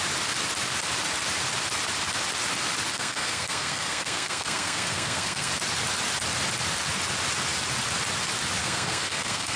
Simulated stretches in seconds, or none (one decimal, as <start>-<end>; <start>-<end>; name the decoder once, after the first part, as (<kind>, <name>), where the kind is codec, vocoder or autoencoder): 2.9-5.5 (codec, SNAC); 8.6-9.6